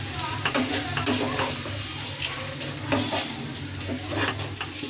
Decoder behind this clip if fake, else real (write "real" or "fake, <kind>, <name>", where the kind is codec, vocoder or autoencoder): real